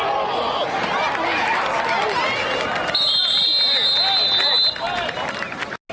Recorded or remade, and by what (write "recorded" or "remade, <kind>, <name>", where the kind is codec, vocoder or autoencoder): recorded